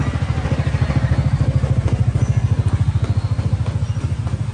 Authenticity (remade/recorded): recorded